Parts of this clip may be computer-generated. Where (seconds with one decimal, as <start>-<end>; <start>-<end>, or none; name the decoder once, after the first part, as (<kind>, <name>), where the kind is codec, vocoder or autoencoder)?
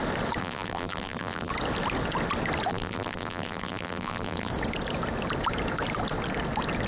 0.4-1.5 (vocoder, BigVGAN v2); 2.7-4.5